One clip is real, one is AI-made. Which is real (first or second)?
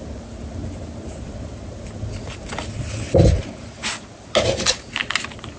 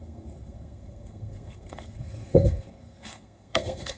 first